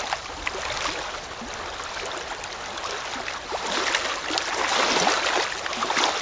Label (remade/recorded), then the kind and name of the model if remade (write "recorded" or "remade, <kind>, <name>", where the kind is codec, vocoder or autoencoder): recorded